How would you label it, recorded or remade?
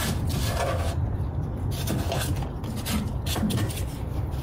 recorded